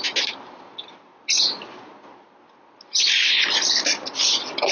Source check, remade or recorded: recorded